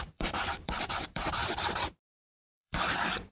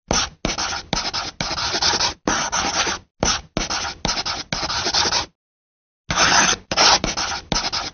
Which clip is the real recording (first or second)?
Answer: second